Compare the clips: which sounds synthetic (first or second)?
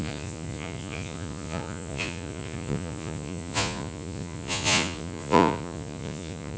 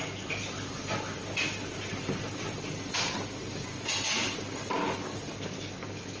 first